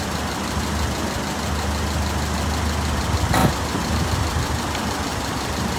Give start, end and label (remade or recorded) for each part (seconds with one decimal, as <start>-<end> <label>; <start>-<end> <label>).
0.0-3.4 recorded; 3.4-3.9 remade; 3.9-5.1 recorded; 5.1-5.8 remade